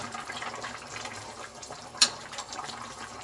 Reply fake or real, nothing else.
fake